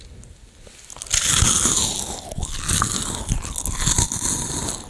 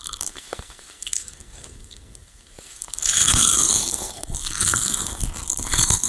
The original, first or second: first